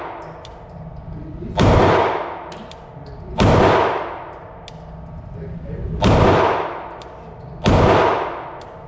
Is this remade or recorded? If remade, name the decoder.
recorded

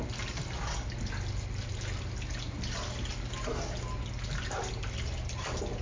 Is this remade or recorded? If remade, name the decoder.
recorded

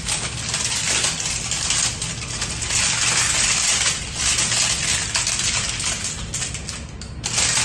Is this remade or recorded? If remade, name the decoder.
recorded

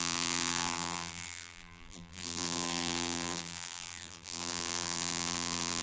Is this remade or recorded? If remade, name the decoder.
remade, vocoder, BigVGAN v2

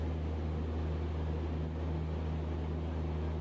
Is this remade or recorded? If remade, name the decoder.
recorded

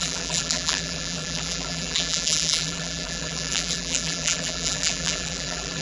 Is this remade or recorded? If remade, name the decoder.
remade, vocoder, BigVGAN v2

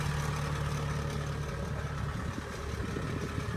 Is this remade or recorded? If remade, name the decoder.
recorded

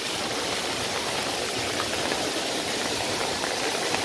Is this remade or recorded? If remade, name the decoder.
recorded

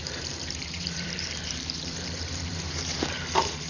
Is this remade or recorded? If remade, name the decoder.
remade, vocoder, BigVGAN v2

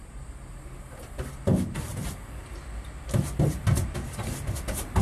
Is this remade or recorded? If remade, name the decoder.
recorded